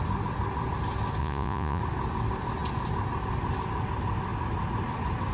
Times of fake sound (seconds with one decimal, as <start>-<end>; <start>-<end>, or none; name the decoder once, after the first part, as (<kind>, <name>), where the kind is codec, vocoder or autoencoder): 1.2-1.8 (vocoder, Vocos)